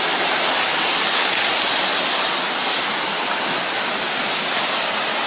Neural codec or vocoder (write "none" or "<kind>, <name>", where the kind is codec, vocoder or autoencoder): none